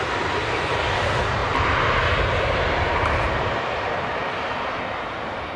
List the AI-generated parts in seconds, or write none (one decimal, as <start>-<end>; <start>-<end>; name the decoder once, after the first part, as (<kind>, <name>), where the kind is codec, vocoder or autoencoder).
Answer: 1.4-4.8 (vocoder, BigVGAN v2)